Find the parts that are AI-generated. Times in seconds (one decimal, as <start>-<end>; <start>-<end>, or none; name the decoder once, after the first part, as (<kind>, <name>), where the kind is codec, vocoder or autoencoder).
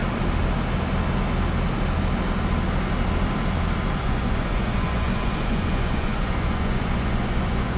4.0-7.8 (vocoder, Vocos)